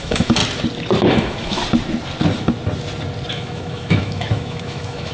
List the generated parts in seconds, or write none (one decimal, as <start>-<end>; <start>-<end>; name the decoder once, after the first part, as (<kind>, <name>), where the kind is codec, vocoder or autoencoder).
0.0-0.4 (autoencoder, DAC-VAE); 1.1-1.6; 3.3-5.1